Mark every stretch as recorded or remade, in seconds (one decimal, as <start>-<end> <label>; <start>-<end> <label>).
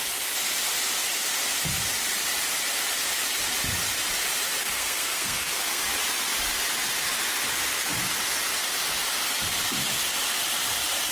0.0-4.6 recorded; 4.6-5.8 remade; 5.8-11.1 recorded